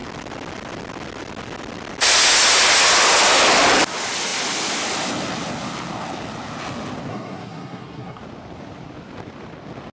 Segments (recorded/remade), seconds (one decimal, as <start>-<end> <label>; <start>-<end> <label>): 0.0-7.1 recorded; 7.1-8.2 remade; 8.2-9.9 recorded